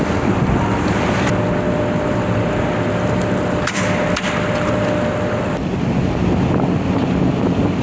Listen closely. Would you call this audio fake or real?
real